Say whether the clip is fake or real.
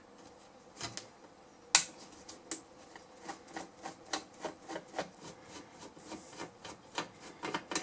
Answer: real